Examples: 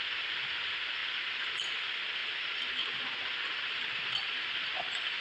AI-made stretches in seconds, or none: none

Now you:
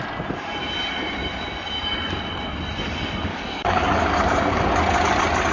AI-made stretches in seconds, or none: 3.3-4.6 (codec, DAC)

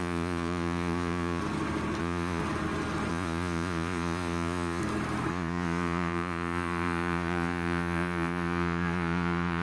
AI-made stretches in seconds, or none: 0.0-1.4 (vocoder, Vocos); 2.0-2.4; 3.1-4.8; 5.3-9.6

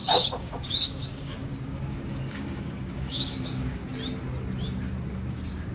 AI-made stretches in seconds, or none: 0.0-3.8 (codec, DAC); 5.1-5.7

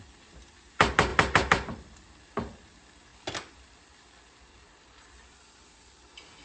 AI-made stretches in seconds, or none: none